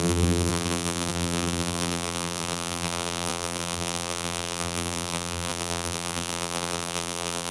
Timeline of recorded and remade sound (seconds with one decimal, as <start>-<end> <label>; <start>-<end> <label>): 0.0-7.5 remade